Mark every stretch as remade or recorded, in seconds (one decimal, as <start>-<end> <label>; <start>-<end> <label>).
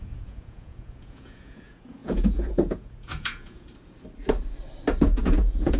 0.0-3.7 remade; 3.7-5.0 recorded; 5.0-5.8 remade